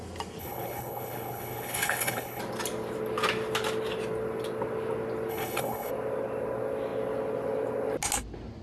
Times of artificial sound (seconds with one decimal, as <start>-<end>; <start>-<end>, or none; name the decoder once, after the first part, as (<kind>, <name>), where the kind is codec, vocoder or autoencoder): 0.4-2.4 (codec, HILCodec); 5.3-5.9